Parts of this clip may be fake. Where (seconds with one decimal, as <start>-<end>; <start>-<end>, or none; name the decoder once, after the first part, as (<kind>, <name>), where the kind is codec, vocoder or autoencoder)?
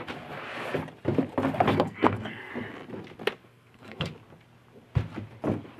1.7-2.5 (codec, SNAC); 3.4-4.1